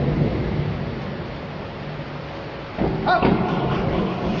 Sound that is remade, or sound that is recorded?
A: recorded